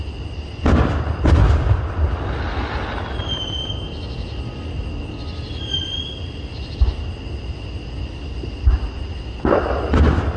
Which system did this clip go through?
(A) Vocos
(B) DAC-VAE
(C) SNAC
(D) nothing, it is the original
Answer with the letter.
D